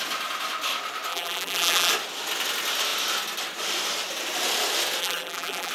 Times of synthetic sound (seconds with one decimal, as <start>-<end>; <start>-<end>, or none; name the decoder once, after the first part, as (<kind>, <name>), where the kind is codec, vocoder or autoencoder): 1.1-1.9 (vocoder, BigVGAN v2); 5.0-5.7